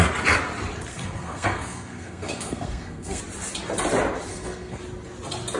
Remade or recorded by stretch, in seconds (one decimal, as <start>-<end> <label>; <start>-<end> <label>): 0.0-0.9 recorded; 0.9-3.2 remade; 3.2-4.3 recorded; 4.3-4.8 remade; 4.8-5.6 recorded